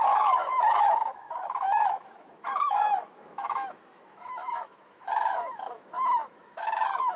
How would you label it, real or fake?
fake